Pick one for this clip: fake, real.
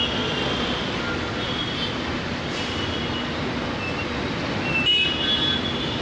real